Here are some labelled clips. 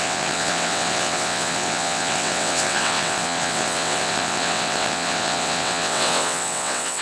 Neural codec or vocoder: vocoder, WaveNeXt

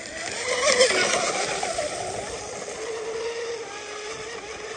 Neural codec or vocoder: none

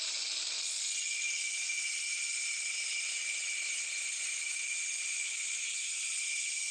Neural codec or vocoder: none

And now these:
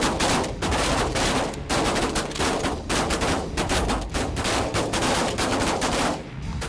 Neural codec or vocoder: none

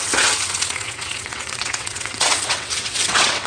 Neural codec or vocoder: vocoder, WaveNeXt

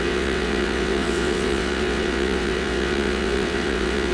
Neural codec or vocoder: vocoder, WaveNeXt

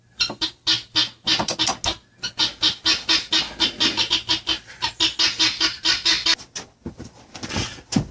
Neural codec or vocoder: none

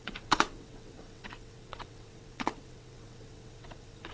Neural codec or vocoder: vocoder, WaveNeXt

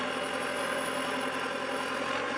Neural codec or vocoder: none